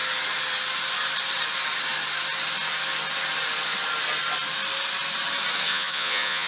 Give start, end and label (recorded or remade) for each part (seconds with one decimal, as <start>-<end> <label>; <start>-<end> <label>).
0.0-5.7 recorded; 5.7-6.5 remade